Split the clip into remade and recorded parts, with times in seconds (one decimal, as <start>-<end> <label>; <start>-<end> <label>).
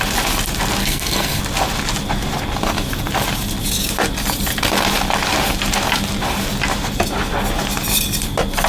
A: 0.0-0.8 recorded; 0.8-1.4 remade; 1.4-8.7 recorded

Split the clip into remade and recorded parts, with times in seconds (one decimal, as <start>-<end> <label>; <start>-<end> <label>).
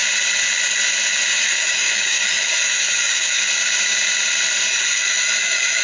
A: 0.0-1.3 recorded; 1.3-3.4 remade; 3.4-4.7 recorded; 4.7-5.8 remade